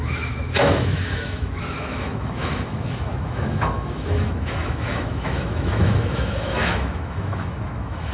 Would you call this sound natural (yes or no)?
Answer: no